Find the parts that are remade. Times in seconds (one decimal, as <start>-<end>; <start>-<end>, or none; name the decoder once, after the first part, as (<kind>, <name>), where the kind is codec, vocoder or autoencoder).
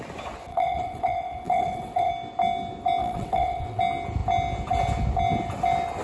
0.5-2.1 (vocoder, WaveNeXt); 3.0-3.8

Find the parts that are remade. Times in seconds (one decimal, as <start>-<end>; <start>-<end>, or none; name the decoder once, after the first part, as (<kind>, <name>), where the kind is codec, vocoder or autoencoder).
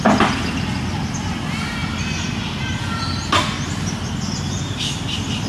none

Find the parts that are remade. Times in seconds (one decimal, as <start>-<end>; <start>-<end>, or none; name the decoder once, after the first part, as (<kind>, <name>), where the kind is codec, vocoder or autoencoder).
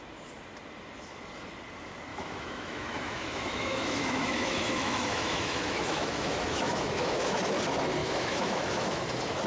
2.1-7.4 (autoencoder, DAC-VAE); 8.0-9.0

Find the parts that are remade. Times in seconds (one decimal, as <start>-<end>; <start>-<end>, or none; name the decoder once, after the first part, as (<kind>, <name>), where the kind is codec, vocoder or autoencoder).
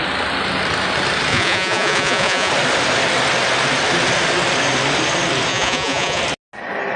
1.3-2.5 (vocoder, Vocos); 5.5-6.2